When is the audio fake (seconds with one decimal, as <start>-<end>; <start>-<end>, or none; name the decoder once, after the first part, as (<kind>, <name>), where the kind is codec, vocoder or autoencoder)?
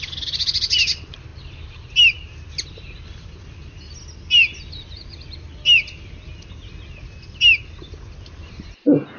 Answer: none